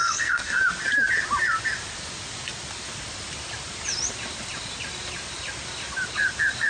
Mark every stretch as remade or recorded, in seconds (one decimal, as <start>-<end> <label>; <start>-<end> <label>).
0.0-0.6 remade; 0.6-6.7 recorded